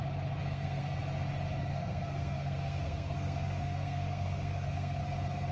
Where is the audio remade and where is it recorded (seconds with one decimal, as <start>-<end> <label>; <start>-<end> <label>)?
0.0-0.4 recorded; 0.4-1.0 remade; 1.0-1.7 recorded; 1.7-5.0 remade; 5.0-5.5 recorded